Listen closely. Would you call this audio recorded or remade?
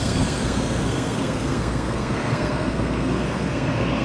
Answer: remade